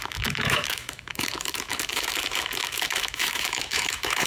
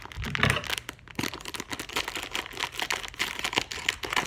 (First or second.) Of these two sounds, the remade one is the first